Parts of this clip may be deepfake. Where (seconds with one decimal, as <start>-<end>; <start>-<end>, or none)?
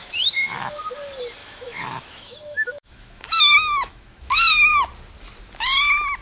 0.0-0.9; 1.4-4.3